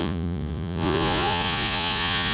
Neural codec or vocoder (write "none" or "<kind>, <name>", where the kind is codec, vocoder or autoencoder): vocoder, Vocos